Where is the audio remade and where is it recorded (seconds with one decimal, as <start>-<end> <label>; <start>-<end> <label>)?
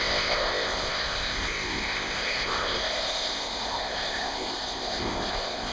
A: 0.0-5.7 remade